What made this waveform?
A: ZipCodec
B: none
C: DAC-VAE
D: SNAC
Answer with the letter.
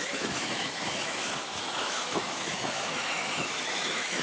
C